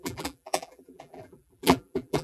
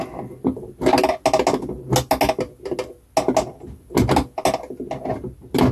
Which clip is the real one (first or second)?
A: second